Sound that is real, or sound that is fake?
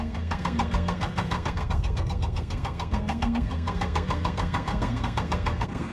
fake